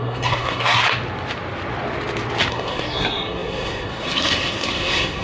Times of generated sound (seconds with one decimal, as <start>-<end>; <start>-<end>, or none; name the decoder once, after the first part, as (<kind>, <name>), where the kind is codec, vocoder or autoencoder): 0.0-0.8 (codec, SNAC); 2.5-5.2